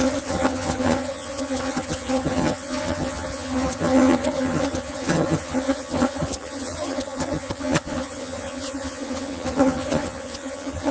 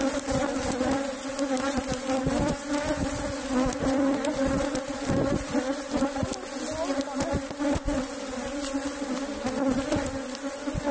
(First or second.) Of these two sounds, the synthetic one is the first